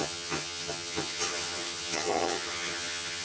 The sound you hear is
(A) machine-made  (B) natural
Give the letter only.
A